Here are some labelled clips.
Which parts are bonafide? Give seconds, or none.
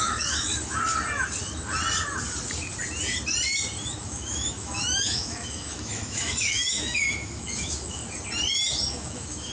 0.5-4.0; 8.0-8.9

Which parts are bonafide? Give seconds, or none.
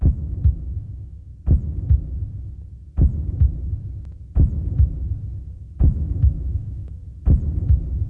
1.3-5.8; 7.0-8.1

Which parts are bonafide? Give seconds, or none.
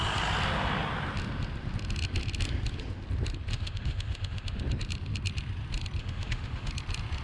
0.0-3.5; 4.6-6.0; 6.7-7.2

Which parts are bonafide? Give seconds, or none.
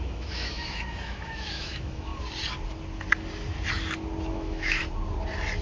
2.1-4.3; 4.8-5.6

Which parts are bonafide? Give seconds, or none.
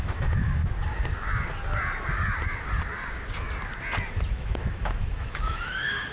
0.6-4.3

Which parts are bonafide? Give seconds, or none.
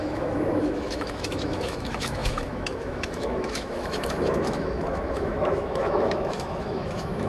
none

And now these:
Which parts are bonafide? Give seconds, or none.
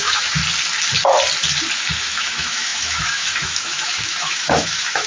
0.4-1.8